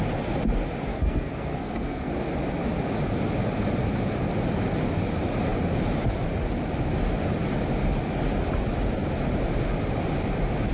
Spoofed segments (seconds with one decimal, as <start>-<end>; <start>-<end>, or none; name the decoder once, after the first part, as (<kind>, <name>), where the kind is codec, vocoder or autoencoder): 0.9-2.1 (codec, SNAC)